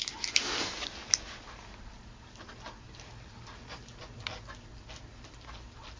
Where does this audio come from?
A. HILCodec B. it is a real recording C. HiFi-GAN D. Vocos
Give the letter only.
B